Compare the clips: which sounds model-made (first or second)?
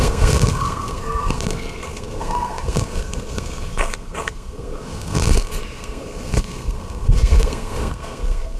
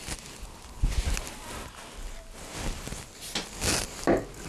first